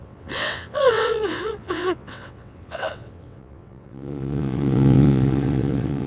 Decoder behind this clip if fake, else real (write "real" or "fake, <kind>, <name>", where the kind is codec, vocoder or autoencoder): fake, vocoder, WaveNeXt